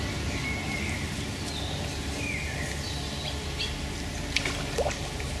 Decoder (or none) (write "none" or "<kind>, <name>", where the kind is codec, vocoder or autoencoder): none